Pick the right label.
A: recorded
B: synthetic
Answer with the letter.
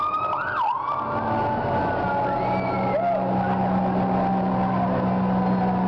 A